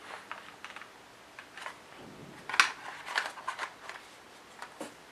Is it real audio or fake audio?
real